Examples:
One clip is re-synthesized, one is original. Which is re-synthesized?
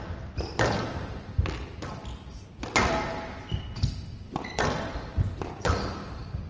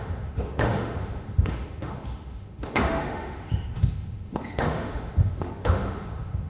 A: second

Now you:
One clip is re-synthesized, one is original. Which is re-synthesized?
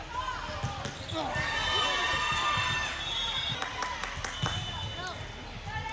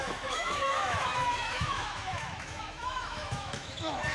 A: second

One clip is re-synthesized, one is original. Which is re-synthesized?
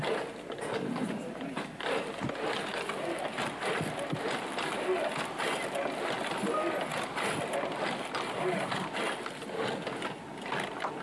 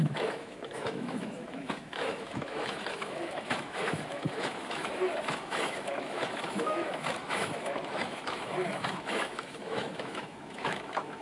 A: second